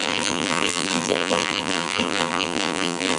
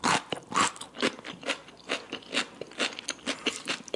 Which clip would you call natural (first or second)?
second